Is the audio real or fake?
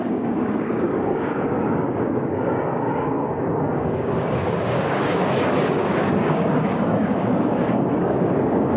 fake